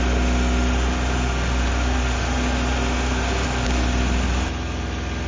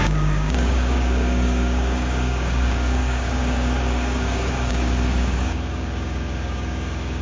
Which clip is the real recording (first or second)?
first